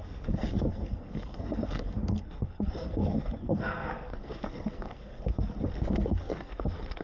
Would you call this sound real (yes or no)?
no